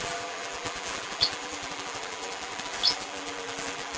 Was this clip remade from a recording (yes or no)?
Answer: yes